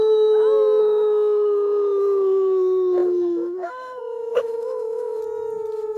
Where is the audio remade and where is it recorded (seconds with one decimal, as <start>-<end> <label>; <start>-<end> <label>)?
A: 0.0-0.8 recorded; 0.8-5.2 remade; 5.2-6.0 recorded